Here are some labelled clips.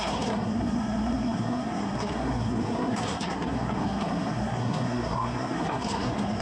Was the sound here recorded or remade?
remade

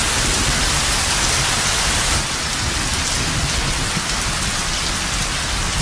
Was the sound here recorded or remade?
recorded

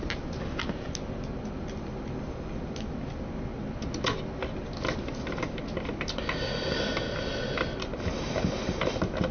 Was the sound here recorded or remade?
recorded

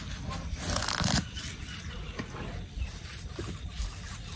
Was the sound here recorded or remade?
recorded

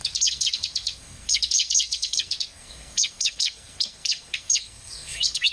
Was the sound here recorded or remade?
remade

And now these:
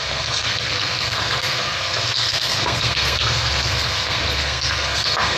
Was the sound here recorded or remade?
remade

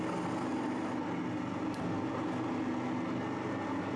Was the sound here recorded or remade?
recorded